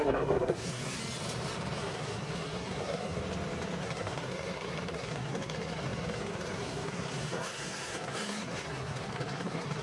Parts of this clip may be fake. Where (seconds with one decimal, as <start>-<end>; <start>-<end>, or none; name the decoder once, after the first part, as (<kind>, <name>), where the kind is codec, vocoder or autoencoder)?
0.0-1.0 (codec, SNAC); 1.8-3.2; 3.8-9.8